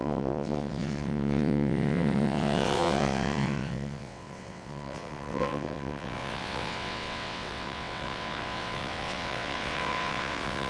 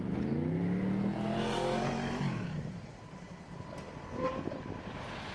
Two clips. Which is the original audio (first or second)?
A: second